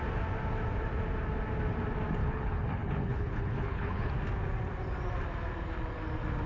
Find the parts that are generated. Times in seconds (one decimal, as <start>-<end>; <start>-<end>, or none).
2.2-4.1